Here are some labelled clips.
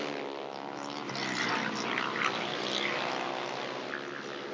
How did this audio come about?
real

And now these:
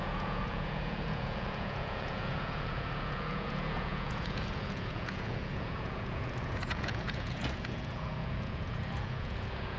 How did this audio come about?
fake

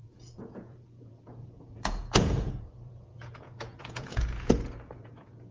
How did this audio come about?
fake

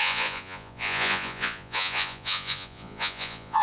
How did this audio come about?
fake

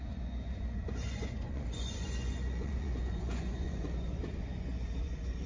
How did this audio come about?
fake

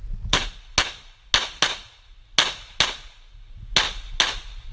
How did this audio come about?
real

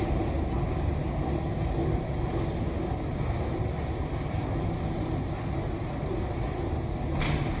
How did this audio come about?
real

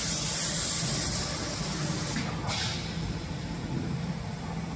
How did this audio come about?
real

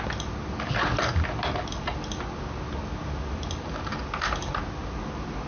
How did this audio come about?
real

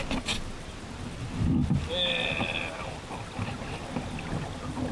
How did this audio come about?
real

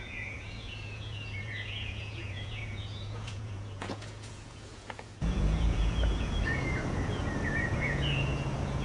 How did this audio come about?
fake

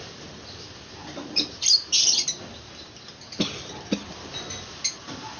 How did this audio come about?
real